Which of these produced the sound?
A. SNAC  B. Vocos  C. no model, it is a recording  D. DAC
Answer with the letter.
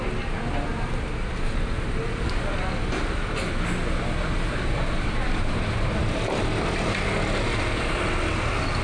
C